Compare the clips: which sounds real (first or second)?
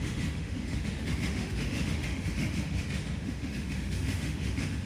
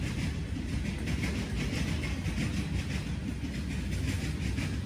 second